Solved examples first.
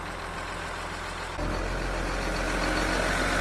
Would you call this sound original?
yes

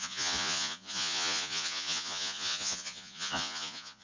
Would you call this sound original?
no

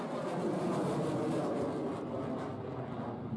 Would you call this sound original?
yes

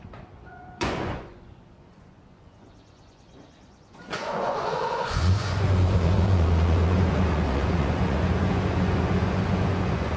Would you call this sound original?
no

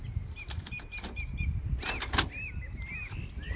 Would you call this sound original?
yes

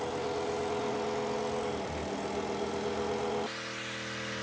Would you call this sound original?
yes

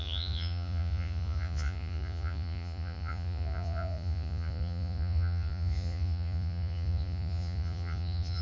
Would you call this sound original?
no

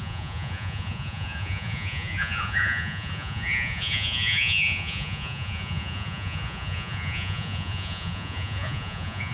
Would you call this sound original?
no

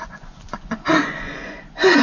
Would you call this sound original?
no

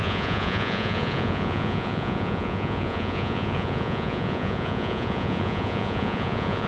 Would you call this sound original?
no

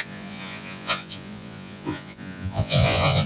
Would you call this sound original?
no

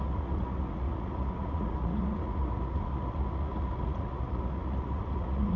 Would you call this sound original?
no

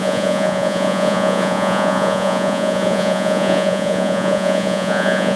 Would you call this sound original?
no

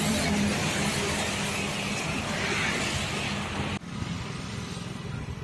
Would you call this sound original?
yes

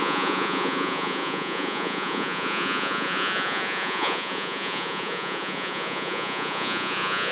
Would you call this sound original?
no